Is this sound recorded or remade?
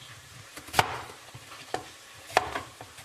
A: remade